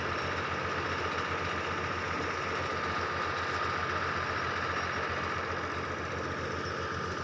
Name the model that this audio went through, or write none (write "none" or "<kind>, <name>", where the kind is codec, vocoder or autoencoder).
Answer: none